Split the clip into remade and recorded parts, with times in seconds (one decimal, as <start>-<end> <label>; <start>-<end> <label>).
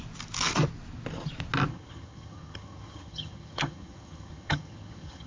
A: 0.0-1.7 recorded; 1.7-5.3 remade